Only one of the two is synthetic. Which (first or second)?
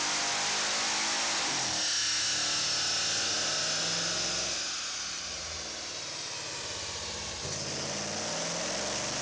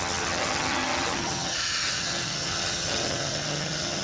second